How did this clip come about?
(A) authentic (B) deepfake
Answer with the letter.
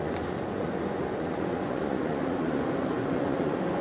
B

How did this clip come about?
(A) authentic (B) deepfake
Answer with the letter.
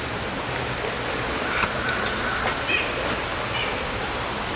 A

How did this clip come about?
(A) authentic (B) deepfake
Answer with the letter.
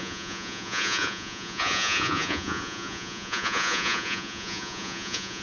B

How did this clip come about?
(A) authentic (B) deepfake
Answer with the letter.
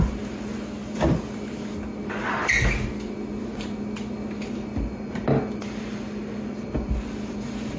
A